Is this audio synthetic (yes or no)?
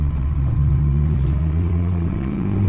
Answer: yes